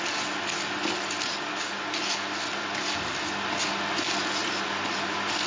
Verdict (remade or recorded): recorded